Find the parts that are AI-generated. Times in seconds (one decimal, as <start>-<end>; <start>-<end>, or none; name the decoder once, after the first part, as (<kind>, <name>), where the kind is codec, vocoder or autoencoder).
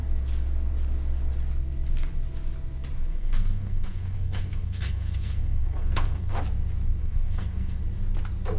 3.1-6.4 (codec, SNAC); 7.0-7.8